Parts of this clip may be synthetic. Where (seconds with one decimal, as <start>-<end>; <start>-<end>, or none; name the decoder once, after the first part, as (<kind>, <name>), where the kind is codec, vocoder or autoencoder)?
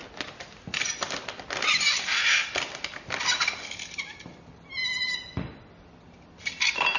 none